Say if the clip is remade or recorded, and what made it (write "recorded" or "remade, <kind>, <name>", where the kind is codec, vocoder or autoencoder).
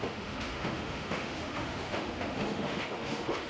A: remade, autoencoder, DAC-VAE